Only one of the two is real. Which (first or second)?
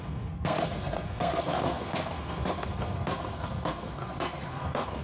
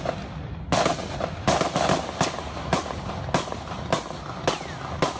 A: second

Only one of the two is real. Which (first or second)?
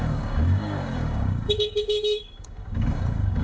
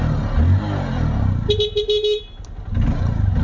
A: second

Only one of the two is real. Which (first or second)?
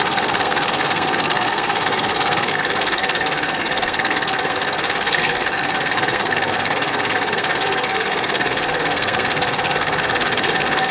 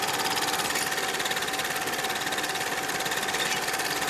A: second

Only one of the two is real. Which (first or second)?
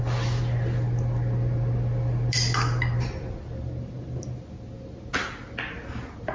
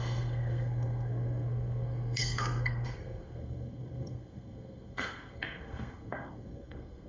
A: first